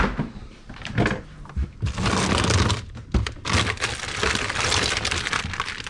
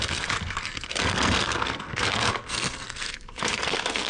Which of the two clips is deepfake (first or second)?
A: second